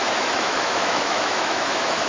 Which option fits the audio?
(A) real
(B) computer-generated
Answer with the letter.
B